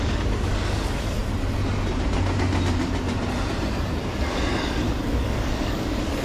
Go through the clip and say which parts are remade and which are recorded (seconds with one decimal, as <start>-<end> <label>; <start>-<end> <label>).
0.0-1.2 remade; 1.2-4.2 recorded; 4.2-6.2 remade